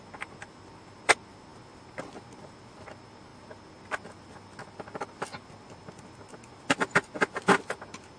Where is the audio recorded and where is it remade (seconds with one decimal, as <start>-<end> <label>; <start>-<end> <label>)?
0.0-8.2 recorded